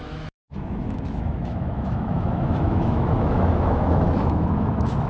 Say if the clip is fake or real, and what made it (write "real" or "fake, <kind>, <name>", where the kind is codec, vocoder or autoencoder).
fake, autoencoder, DAC-VAE